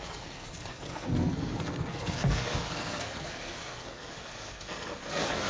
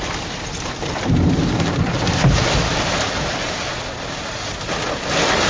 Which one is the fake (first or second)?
first